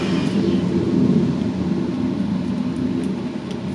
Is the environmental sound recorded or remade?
recorded